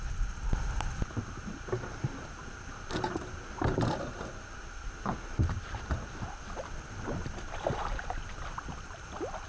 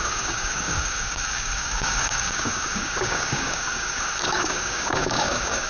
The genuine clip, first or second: first